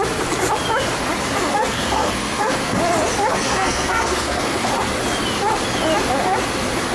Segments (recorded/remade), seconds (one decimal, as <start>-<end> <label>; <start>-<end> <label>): 0.0-1.5 recorded; 1.5-2.8 remade; 2.8-3.3 recorded; 3.3-4.7 remade; 4.7-6.9 recorded